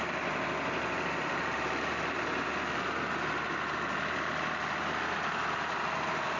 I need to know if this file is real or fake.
real